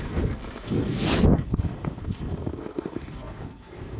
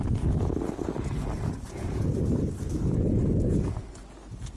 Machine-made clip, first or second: first